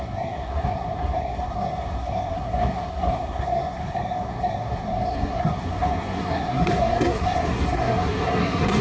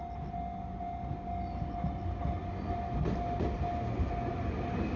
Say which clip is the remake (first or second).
first